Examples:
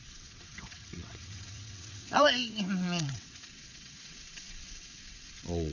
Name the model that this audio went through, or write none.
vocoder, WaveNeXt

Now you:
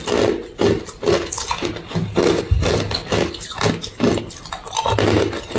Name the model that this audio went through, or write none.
none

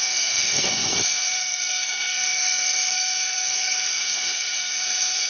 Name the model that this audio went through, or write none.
codec, SNAC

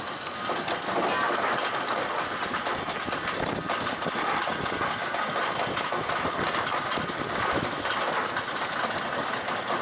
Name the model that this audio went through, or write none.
none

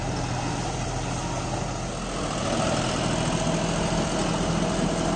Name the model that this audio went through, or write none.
none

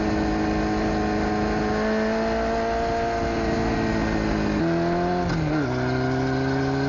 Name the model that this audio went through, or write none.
none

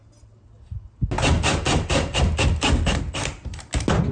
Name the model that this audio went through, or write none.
none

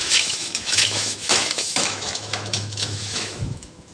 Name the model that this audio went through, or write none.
autoencoder, DAC-VAE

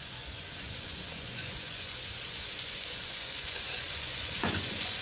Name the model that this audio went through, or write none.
vocoder, Vocos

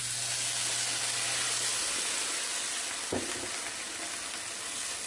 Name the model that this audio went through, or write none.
none